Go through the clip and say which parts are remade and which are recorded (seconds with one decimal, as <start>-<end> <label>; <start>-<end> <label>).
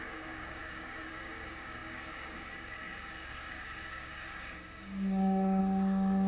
0.0-6.3 remade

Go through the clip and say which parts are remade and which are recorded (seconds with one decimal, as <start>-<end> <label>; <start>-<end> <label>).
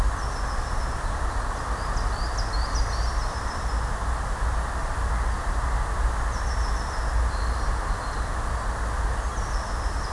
0.0-10.1 recorded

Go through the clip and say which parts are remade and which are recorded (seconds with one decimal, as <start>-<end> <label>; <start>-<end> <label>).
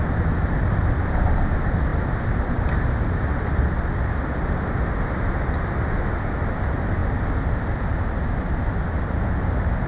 0.0-9.9 recorded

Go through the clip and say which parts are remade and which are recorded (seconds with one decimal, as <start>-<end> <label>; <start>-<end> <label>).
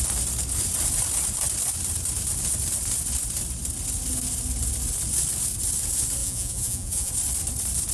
0.0-6.2 recorded; 6.2-7.1 remade; 7.1-7.9 recorded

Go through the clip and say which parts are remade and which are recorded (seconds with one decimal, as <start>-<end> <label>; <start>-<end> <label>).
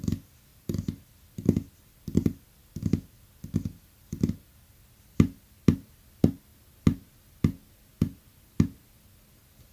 0.0-0.5 recorded; 0.5-5.0 remade; 5.0-9.7 recorded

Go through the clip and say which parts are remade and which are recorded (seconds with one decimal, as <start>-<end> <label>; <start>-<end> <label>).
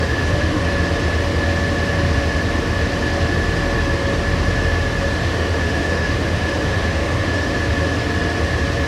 0.0-0.6 remade; 0.6-5.2 recorded; 5.2-7.5 remade; 7.5-8.9 recorded